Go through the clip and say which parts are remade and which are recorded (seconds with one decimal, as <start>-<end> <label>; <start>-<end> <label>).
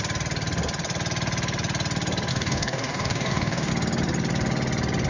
0.0-2.3 recorded; 2.3-3.7 remade; 3.7-5.1 recorded